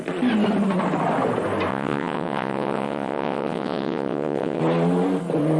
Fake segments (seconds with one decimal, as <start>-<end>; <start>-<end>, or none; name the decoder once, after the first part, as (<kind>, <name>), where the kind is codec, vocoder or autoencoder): 1.7-4.6 (vocoder, WaveNeXt)